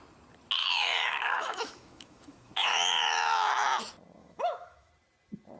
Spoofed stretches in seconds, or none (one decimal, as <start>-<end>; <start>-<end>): 0.6-3.8; 4.2-4.9